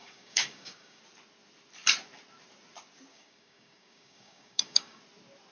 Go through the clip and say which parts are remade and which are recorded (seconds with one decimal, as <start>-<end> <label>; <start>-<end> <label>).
0.0-1.0 remade; 1.0-3.1 recorded; 3.1-5.0 remade; 5.0-5.5 recorded